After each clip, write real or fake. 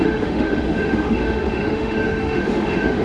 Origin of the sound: fake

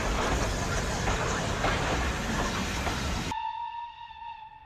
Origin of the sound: real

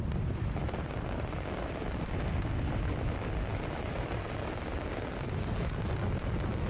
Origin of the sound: real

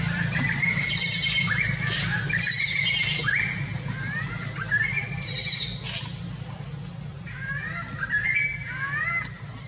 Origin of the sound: real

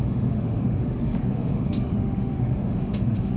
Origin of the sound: fake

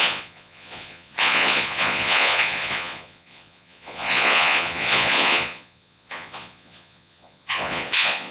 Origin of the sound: fake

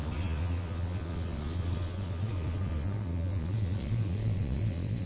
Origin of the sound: fake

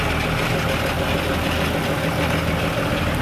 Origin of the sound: real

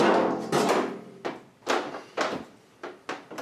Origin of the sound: real